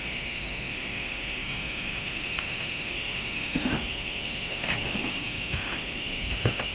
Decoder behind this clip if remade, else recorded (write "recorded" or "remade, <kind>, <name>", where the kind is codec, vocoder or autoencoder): remade, autoencoder, DAC-VAE